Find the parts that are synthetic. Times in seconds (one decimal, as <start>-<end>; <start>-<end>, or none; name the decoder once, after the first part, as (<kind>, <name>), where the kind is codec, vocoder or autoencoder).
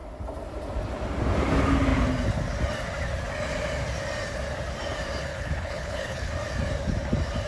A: 5.3-6.3 (codec, HILCodec)